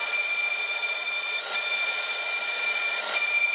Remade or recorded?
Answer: remade